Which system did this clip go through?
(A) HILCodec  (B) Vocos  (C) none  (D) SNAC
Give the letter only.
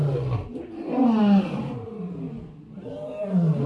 C